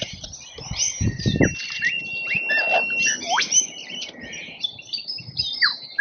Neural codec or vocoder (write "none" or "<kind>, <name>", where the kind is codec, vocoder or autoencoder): none